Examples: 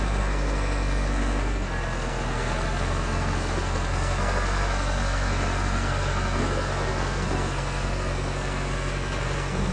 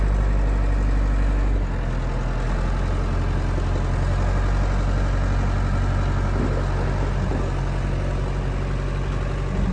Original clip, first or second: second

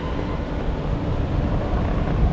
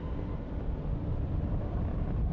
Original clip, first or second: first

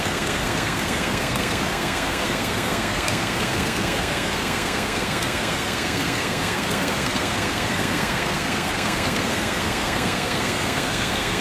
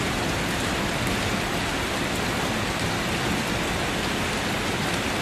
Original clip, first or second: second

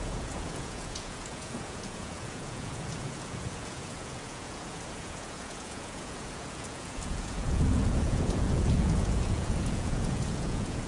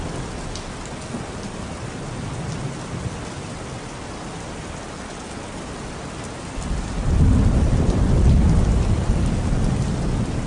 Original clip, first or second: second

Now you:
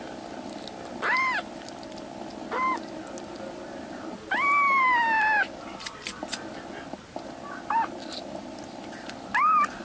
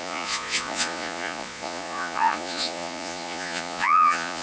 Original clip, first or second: first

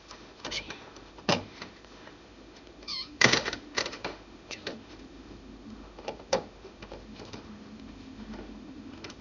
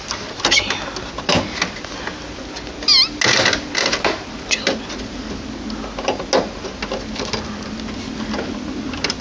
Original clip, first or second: second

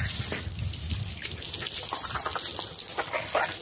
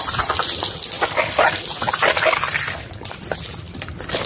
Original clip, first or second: first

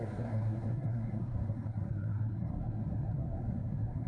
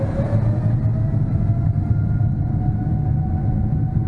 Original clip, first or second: second